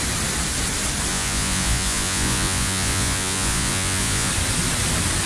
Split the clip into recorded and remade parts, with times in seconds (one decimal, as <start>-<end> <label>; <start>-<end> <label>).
0.0-1.1 recorded; 1.1-4.3 remade; 4.3-5.3 recorded